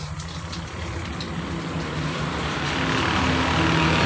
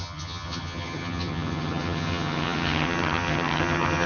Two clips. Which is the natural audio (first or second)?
first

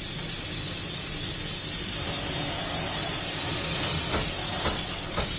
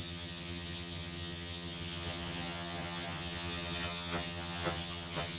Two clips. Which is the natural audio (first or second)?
first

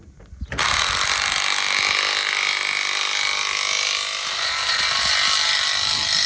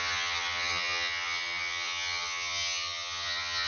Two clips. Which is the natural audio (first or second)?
first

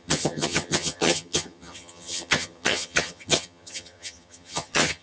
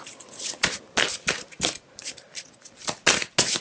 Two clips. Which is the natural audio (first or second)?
second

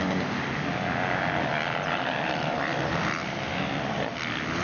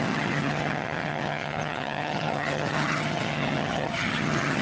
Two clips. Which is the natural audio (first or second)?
first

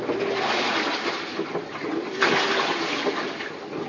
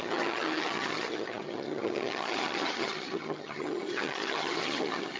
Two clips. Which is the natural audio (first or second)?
first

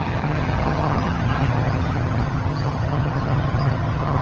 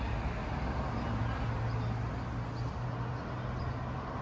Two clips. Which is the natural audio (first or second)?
second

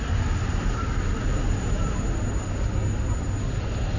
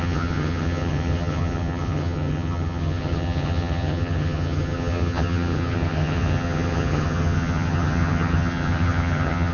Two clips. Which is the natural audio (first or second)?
first